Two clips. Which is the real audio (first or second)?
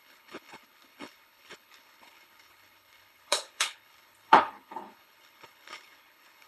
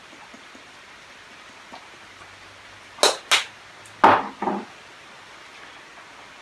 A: second